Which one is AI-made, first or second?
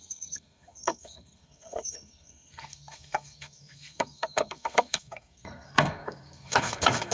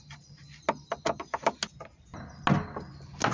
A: first